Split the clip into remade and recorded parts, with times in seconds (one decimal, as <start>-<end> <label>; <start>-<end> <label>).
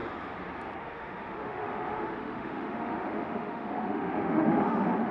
0.0-0.8 recorded; 0.8-5.1 remade